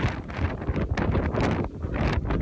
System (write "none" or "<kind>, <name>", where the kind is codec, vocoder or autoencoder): none